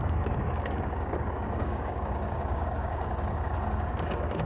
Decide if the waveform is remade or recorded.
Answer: remade